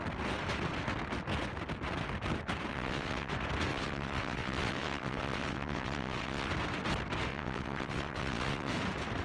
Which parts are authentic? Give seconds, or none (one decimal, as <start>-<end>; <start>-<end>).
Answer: 0.0-2.7; 3.3-3.7; 6.5-7.3; 8.7-9.2